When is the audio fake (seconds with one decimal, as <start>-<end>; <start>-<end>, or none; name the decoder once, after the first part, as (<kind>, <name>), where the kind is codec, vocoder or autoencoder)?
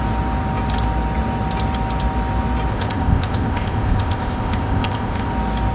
2.7-5.3 (codec, ZipCodec)